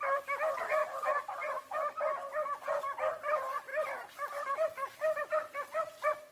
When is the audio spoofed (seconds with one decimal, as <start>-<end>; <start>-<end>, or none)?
0.8-2.8; 3.7-5.5